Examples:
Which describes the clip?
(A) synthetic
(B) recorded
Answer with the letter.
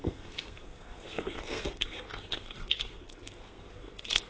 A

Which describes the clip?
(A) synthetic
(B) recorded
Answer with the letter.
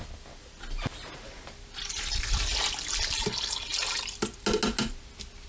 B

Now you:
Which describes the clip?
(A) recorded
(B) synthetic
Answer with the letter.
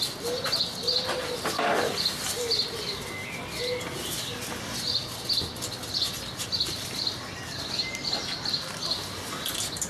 A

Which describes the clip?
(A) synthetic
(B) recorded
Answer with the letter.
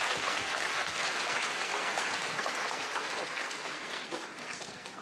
A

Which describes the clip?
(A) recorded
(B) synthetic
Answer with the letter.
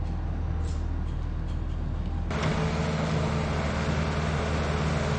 A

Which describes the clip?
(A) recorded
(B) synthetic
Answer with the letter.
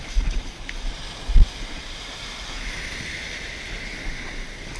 A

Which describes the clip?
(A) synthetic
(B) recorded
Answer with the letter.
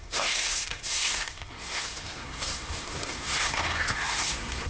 A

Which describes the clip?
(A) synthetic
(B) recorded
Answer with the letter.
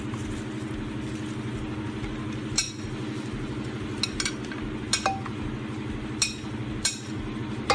B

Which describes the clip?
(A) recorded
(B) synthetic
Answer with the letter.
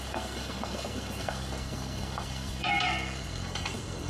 B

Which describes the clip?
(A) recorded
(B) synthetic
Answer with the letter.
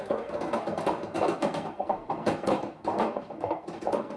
B